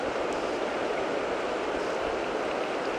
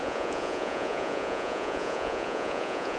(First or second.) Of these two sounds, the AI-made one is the second